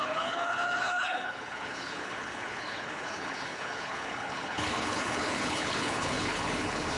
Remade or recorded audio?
remade